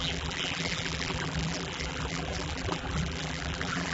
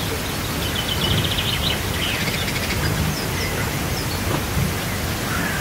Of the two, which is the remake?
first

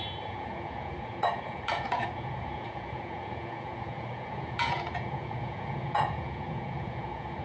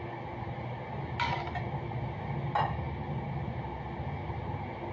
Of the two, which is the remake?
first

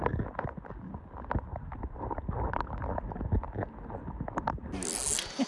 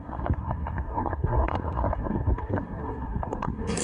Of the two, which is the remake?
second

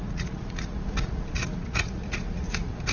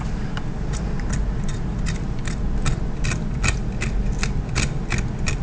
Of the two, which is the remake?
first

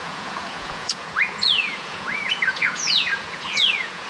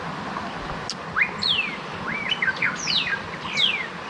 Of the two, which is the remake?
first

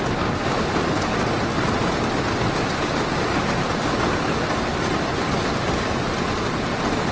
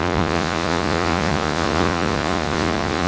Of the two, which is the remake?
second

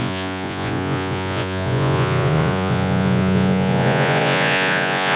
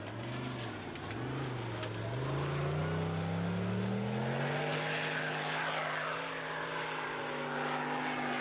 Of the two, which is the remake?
first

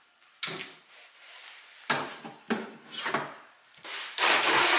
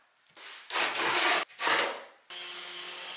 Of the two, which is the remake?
first